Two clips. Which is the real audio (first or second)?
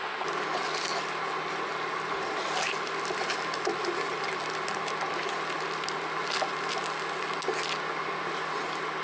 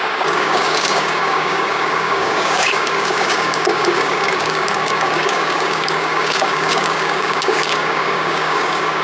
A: first